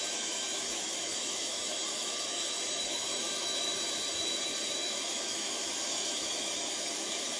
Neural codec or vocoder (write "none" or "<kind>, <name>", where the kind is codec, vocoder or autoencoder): autoencoder, DAC-VAE